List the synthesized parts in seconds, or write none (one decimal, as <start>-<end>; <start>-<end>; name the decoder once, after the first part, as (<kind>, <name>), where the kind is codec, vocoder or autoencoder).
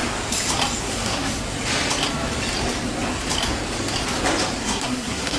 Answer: 0.8-1.4 (codec, SNAC); 4.6-5.4